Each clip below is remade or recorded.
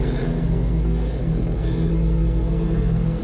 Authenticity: remade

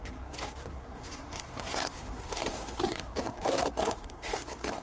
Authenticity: remade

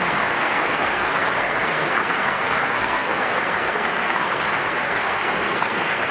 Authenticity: remade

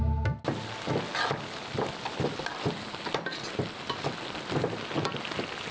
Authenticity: recorded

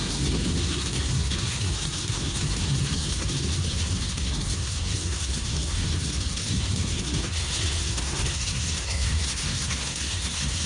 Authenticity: remade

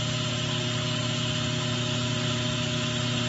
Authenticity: recorded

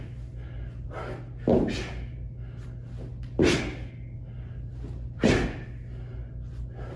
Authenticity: recorded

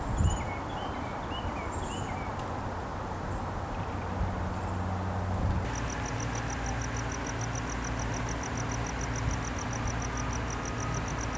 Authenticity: recorded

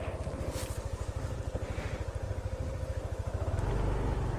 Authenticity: recorded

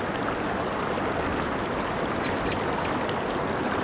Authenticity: recorded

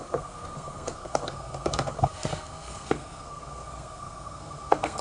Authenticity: remade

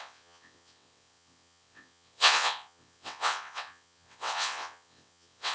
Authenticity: remade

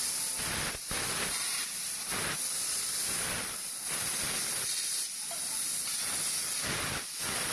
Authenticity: remade